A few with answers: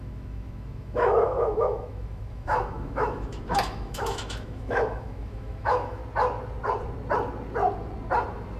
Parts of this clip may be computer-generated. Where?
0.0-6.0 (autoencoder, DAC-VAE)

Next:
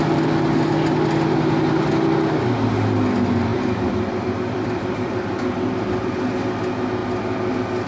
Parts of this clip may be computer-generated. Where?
3.5-6.1 (vocoder, BigVGAN v2)

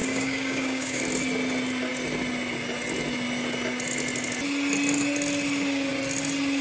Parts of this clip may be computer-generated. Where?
0.0-1.0 (codec, DAC)

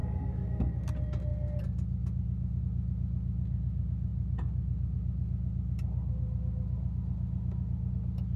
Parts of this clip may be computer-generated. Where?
0.0-0.7 (codec, DAC)